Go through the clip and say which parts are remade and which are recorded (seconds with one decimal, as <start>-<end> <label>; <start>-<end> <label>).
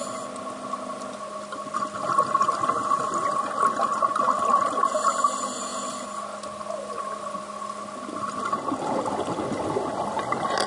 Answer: 0.0-10.7 recorded